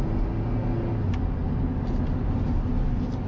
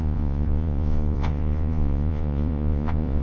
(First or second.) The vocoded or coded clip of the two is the second